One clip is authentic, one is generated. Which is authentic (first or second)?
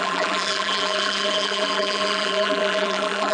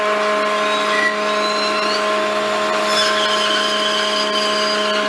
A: second